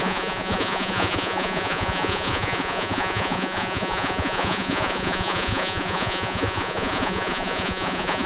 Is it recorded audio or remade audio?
remade